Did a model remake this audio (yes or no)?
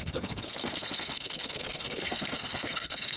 yes